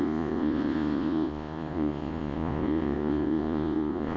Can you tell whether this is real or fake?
fake